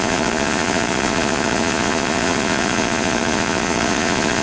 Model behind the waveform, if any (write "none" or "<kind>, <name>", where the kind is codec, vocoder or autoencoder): vocoder, Vocos